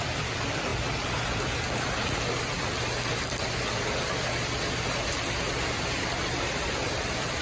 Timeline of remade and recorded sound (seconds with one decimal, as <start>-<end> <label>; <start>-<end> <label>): 0.0-0.7 remade; 0.7-5.1 recorded; 5.1-7.4 remade